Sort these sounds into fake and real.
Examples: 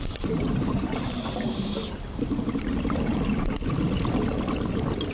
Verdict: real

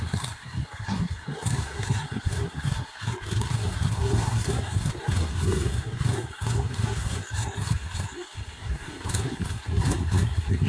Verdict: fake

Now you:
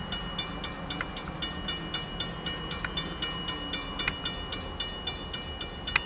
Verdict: real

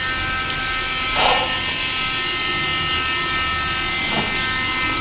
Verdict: real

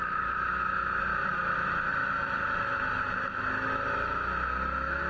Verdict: fake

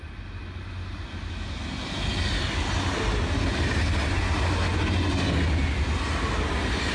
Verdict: real